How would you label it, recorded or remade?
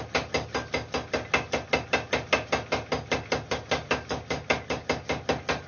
recorded